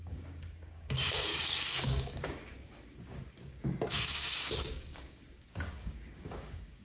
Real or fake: fake